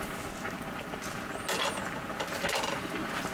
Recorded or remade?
recorded